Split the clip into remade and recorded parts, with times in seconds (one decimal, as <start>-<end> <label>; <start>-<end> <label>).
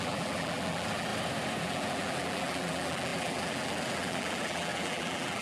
0.0-1.1 remade; 1.1-1.6 recorded; 1.6-5.4 remade